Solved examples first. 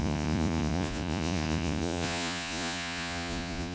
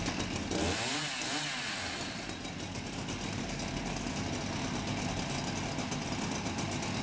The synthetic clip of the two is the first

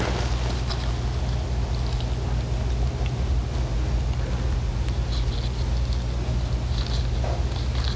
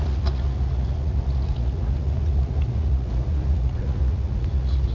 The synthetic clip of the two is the second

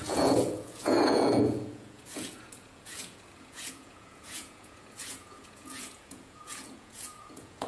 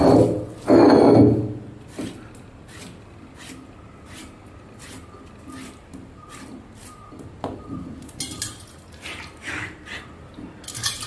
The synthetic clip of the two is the first